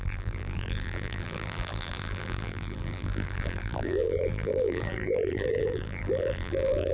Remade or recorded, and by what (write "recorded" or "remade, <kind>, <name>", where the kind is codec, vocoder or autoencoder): remade, vocoder, BigVGAN v2